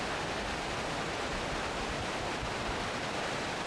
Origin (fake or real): real